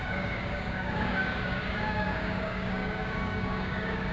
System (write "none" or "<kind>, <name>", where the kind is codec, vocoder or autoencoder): codec, DAC